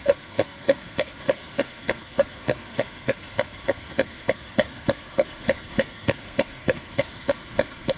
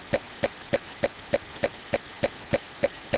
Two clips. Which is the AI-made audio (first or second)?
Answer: first